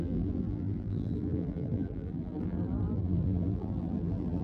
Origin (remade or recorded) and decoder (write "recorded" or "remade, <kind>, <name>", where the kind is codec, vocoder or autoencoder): remade, vocoder, BigVGAN v2